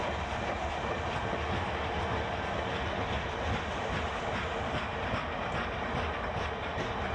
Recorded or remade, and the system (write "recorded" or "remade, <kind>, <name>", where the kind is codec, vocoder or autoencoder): recorded